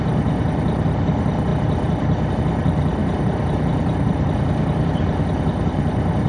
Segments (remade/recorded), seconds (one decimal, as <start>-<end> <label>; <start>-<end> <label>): 0.0-1.5 remade; 1.5-2.3 recorded; 2.3-6.3 remade